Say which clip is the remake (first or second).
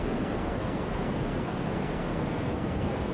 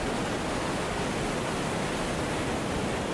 first